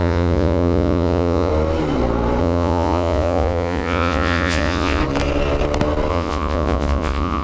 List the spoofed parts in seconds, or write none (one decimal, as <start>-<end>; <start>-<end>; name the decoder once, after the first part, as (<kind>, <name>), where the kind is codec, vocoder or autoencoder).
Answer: 0.0-1.5 (vocoder, Vocos); 2.4-5.0; 6.1-7.4